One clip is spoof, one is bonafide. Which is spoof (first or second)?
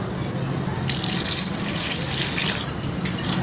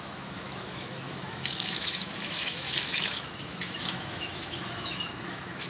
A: second